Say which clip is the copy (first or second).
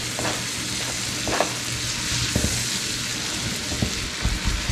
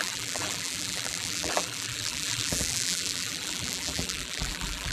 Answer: second